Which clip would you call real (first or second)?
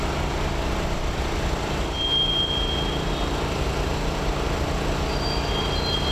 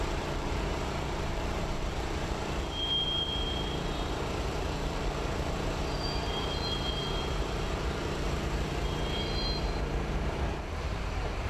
first